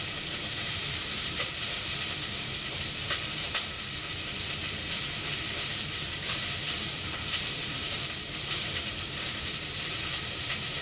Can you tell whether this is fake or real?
fake